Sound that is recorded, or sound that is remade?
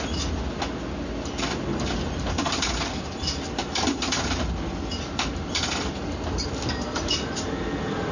recorded